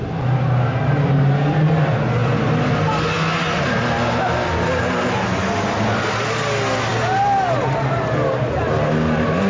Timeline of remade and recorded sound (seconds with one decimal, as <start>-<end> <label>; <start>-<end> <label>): 0.0-9.5 recorded